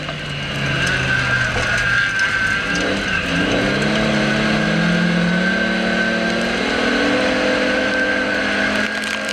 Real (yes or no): yes